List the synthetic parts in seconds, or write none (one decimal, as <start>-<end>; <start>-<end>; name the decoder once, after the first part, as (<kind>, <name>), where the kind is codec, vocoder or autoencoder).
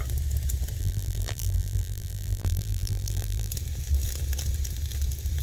0.8-3.5 (vocoder, BigVGAN v2)